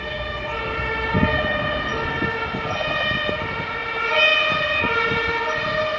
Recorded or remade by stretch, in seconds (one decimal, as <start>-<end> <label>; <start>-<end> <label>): 0.0-6.0 recorded